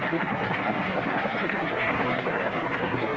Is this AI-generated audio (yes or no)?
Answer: yes